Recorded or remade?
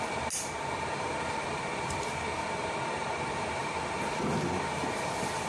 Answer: remade